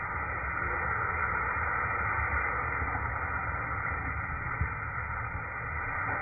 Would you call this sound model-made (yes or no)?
no